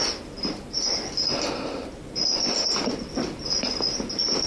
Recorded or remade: recorded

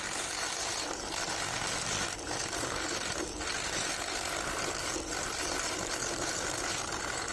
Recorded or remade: recorded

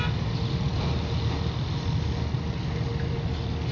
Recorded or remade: recorded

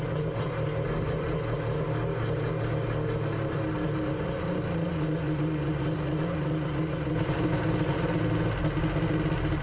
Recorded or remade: recorded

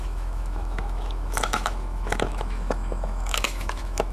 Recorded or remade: remade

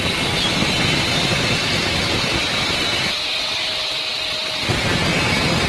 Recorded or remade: recorded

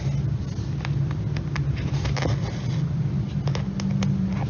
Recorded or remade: recorded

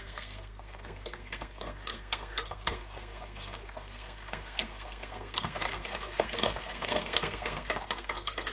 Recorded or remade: remade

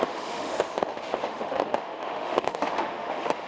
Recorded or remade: remade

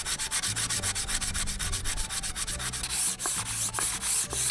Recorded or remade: recorded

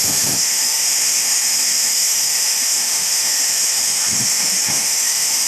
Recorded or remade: remade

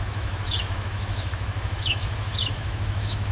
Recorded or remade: remade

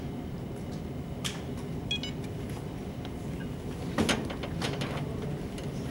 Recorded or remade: recorded